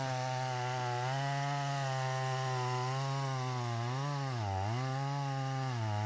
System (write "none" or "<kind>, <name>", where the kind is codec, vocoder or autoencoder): none